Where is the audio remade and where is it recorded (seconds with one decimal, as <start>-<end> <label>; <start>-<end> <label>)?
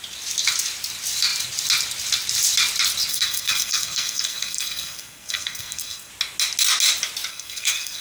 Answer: 0.0-3.1 recorded; 3.1-6.1 remade; 6.1-7.3 recorded; 7.3-8.0 remade